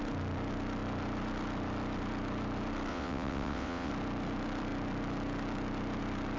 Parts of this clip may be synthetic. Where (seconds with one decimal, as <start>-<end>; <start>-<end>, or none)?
2.9-3.9